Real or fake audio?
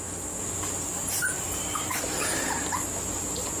real